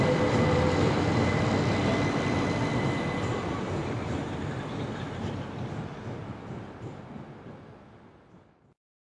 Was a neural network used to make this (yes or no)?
no